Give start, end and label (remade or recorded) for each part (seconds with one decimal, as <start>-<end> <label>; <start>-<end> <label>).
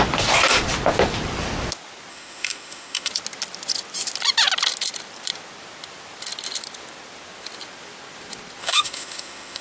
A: 0.0-2.1 recorded; 2.1-3.1 remade; 3.1-8.6 recorded; 8.6-9.6 remade